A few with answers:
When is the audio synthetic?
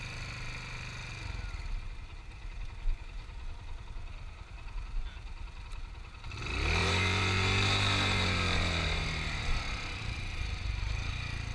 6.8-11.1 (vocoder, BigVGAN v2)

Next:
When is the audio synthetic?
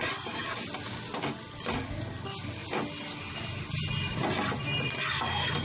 none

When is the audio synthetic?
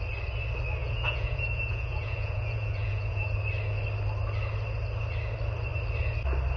0.8-3.2 (vocoder, Vocos)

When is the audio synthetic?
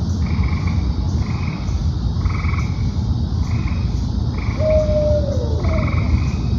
none